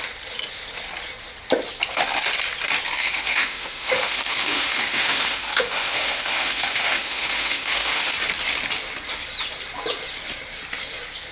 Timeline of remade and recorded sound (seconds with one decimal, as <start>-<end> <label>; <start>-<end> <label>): 0.0-3.0 recorded; 3.0-8.0 remade; 8.0-11.3 recorded